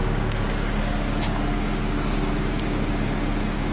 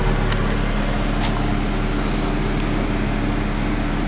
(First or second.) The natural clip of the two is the second